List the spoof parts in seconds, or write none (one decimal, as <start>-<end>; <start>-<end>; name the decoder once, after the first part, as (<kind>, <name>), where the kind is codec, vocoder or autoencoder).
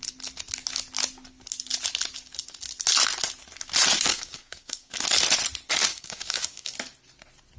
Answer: 4.1-4.9 (codec, DAC); 5.9-6.7